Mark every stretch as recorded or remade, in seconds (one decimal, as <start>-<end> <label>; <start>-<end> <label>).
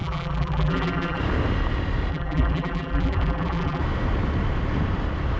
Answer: 0.0-1.2 remade; 1.2-2.1 recorded; 2.1-3.8 remade; 3.8-5.4 recorded